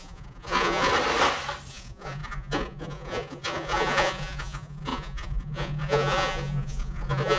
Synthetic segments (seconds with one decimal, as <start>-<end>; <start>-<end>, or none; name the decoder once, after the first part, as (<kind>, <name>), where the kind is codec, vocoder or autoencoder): 0.0-0.9 (vocoder, Vocos); 1.7-7.4